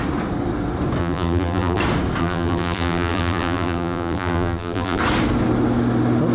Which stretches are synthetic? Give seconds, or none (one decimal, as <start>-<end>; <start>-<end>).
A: 1.0-1.8; 2.2-5.0